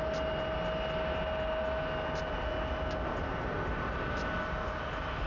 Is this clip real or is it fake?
real